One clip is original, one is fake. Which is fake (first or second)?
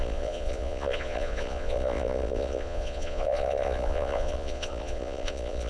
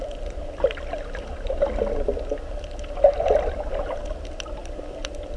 first